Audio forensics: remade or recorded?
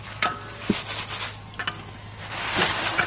recorded